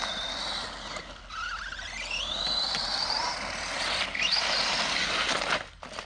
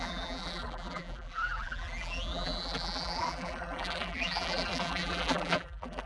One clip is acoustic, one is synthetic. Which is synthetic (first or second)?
second